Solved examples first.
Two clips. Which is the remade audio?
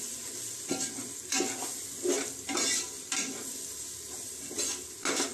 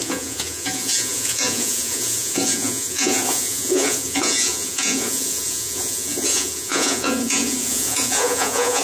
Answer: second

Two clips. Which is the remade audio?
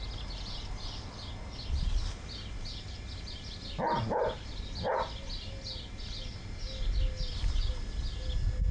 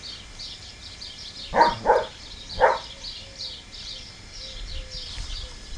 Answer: second